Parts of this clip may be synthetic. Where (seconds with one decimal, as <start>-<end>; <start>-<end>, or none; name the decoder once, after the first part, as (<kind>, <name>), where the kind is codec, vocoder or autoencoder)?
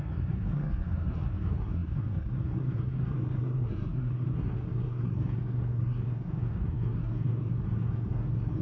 0.0-8.6 (codec, SNAC)